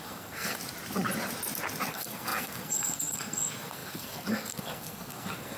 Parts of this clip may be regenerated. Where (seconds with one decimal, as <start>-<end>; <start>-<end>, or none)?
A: 0.0-0.6; 1.9-5.6